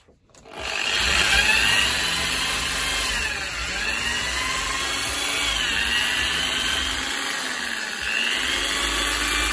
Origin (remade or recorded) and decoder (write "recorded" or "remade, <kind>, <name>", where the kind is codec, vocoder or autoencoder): recorded